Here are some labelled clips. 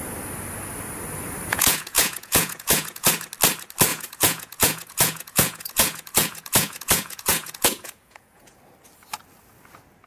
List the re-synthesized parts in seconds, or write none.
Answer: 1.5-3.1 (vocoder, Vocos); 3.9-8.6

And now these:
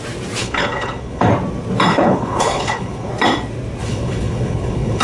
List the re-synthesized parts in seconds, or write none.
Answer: 0.4-1.3 (codec, HILCodec); 1.9-3.1; 3.8-5.0

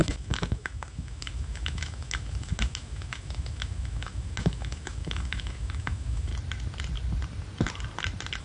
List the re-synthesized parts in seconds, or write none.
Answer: 0.0-6.3 (autoencoder, DAC-VAE)

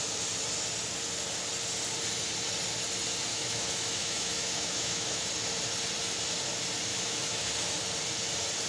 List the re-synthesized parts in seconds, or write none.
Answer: 3.3-5.3 (autoencoder, DAC-VAE); 6.9-7.5

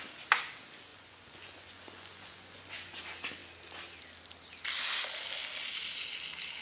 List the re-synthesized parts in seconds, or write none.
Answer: 0.9-3.0 (vocoder, Vocos)

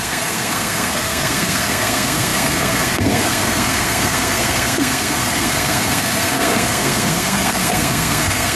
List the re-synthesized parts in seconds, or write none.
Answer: 0.0-8.5 (codec, SNAC)

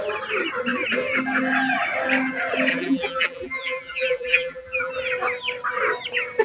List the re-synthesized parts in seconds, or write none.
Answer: 2.7-4.9 (vocoder, BigVGAN v2)

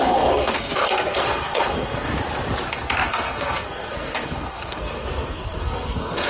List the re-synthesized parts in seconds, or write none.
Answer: 0.0-2.1 (codec, SNAC); 2.7-6.3